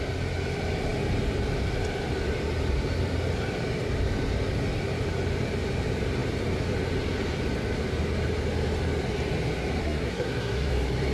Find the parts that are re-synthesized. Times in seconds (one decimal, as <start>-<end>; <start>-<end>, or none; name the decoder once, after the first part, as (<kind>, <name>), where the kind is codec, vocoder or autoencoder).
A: 9.8-10.7 (codec, SNAC)